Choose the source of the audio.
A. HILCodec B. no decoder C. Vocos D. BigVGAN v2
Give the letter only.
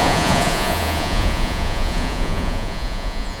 C